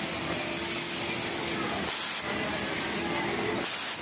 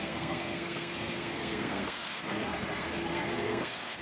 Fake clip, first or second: second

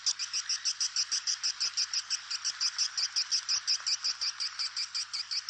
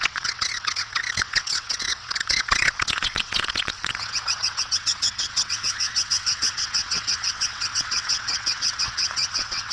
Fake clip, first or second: second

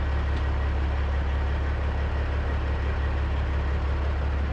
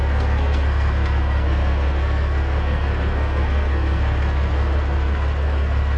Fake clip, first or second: second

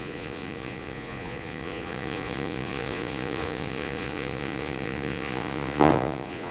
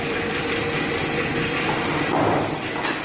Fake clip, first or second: first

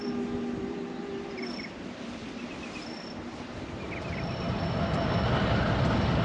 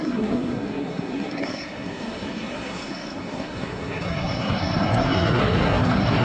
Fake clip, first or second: second